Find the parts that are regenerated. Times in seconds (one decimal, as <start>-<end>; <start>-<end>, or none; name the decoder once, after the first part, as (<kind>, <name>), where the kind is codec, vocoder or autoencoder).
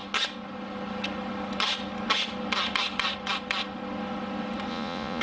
4.7-5.2 (vocoder, Vocos)